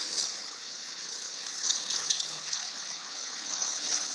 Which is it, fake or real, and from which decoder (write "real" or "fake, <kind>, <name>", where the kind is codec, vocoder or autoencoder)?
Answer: fake, codec, HILCodec